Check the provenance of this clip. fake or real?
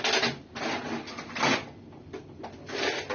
real